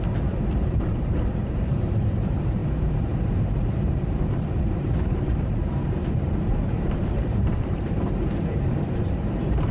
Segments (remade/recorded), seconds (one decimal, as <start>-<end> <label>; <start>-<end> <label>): 0.0-2.6 remade; 2.6-3.2 recorded; 3.2-9.7 remade